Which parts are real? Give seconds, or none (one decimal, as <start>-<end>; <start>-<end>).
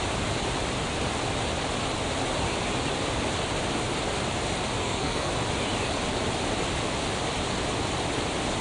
0.0-4.8; 5.3-8.6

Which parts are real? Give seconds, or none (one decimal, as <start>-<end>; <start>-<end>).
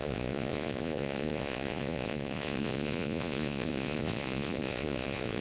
none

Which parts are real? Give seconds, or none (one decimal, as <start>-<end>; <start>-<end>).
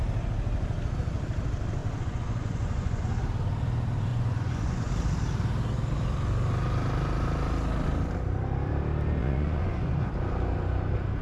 0.0-1.8; 3.0-4.1; 4.9-9.2; 10.1-11.2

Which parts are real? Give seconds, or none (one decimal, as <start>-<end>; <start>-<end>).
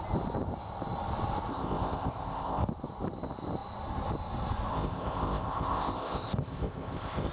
0.0-1.5; 2.7-4.7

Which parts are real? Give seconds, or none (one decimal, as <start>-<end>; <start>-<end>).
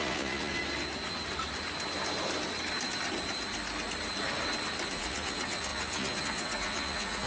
0.5-4.9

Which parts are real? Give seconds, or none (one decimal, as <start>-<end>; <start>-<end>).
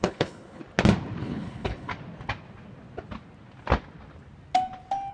0.6-1.2; 1.9-5.1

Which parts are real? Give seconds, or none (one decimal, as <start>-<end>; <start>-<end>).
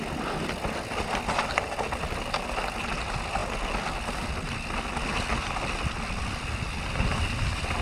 0.0-7.8